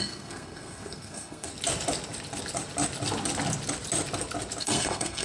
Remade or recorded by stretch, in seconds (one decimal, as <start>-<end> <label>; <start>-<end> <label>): 0.0-1.5 remade; 1.5-4.6 recorded; 4.6-5.2 remade